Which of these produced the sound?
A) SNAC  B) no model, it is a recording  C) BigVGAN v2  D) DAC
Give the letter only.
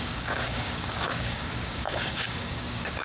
D